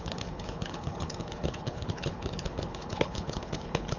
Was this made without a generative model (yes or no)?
no